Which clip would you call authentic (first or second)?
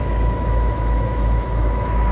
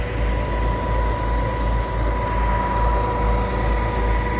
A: second